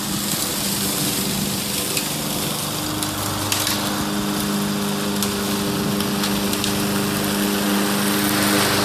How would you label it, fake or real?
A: real